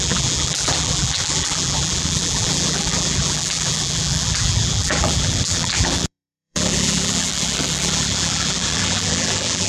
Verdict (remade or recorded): remade